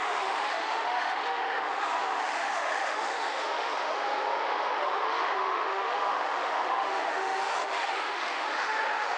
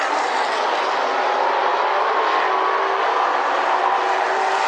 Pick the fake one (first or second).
first